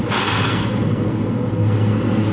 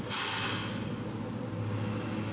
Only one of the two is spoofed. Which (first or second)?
first